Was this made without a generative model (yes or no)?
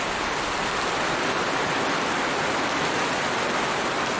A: yes